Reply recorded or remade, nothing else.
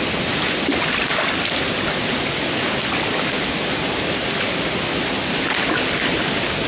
recorded